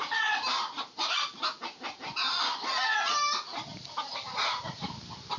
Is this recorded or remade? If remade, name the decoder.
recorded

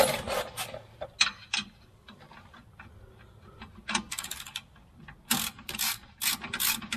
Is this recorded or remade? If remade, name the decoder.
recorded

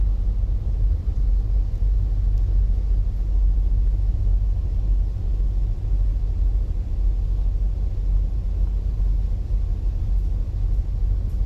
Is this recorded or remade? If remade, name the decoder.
recorded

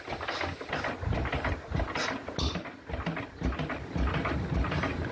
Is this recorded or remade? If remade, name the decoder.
recorded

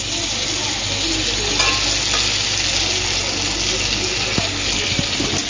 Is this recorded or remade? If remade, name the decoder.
recorded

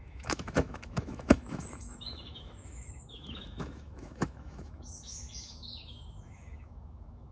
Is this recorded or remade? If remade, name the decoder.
remade, autoencoder, DAC-VAE